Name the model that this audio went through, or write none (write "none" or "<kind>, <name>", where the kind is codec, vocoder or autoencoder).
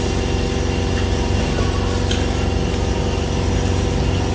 none